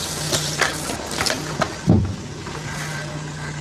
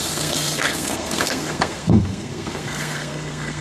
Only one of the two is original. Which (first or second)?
first